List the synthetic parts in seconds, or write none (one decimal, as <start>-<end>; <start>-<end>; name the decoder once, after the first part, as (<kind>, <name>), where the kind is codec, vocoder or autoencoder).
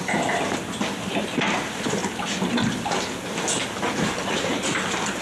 none